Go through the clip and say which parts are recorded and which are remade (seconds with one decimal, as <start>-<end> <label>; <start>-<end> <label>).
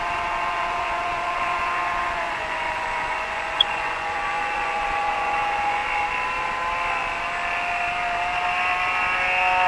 0.0-5.8 remade; 5.8-9.7 recorded